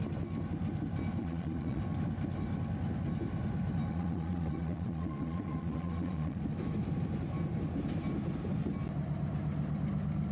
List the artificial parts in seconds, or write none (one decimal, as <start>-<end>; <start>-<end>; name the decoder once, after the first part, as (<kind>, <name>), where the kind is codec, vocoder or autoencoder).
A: 1.2-1.8 (vocoder, Vocos); 3.9-6.4